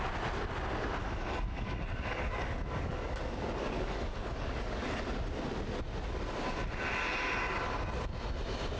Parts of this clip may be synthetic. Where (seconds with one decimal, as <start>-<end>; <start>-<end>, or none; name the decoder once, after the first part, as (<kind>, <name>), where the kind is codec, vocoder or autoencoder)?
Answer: 1.0-5.0 (codec, DAC)